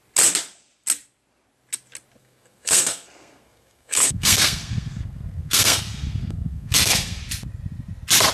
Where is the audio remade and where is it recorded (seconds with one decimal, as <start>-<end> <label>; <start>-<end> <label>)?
0.0-2.2 recorded; 2.2-7.2 remade; 7.2-8.3 recorded